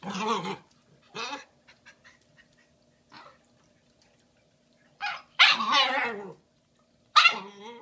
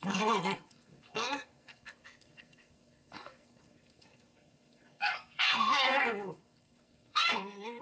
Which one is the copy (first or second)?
second